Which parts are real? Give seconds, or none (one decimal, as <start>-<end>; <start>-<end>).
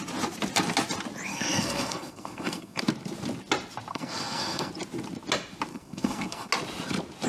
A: 0.0-1.3; 2.8-3.9; 4.7-5.7; 6.5-7.3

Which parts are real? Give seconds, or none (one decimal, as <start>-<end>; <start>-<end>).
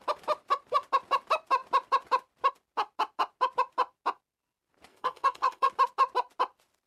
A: 0.0-4.9; 5.7-6.9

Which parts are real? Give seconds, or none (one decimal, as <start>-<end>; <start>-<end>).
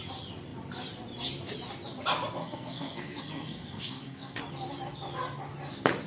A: 0.0-2.4; 4.4-6.1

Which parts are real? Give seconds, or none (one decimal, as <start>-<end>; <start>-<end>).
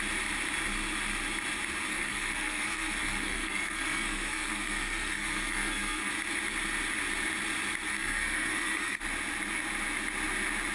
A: 0.0-1.9; 6.1-7.9; 9.0-10.7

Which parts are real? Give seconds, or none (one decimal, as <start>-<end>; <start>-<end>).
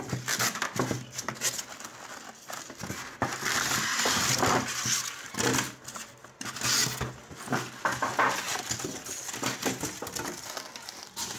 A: 0.0-11.4